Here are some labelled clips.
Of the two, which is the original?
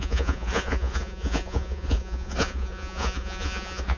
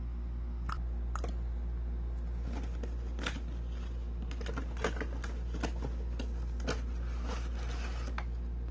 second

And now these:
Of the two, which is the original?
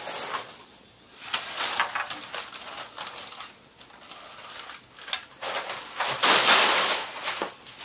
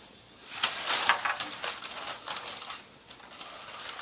first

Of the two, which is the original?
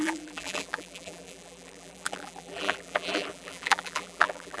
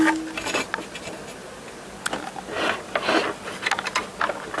second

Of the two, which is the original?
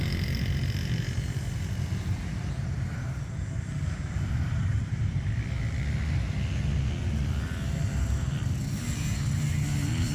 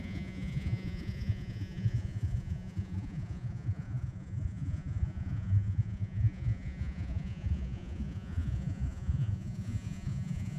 first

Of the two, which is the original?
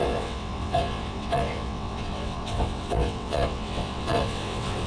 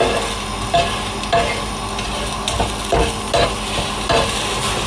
second